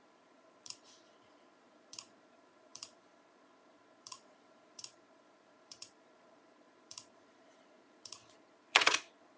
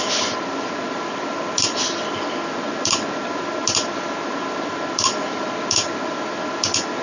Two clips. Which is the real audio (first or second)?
second